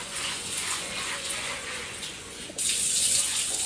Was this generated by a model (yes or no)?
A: yes